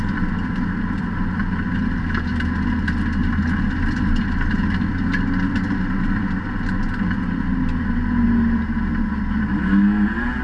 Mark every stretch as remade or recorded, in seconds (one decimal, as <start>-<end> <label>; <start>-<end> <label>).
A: 0.0-10.4 recorded